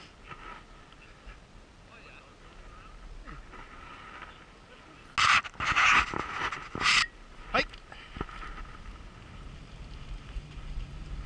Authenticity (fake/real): real